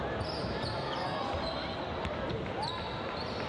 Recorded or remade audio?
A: recorded